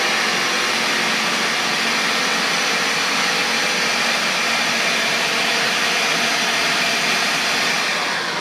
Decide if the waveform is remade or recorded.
recorded